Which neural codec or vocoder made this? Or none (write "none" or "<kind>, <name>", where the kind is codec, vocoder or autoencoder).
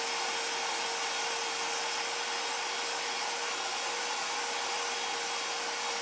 none